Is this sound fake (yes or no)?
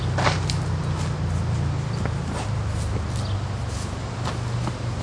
no